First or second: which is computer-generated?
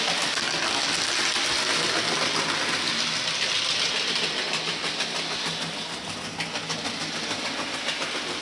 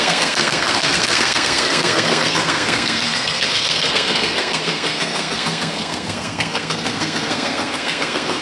second